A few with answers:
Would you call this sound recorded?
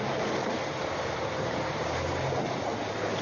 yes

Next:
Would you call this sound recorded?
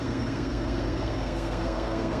no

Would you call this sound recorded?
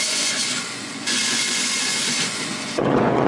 no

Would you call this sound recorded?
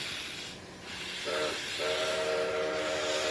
yes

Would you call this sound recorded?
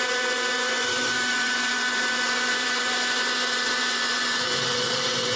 no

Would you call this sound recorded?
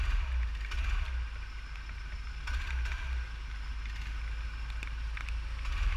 yes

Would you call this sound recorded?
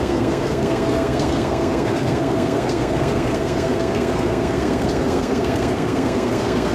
no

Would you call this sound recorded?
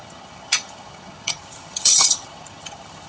no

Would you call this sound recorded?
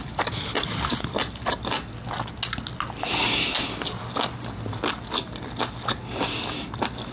yes